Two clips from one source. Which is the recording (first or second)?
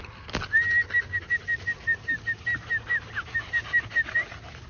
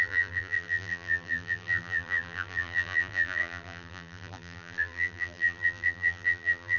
first